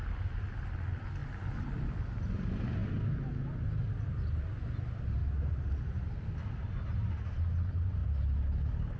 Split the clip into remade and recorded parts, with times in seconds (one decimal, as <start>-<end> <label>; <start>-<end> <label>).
0.0-9.0 recorded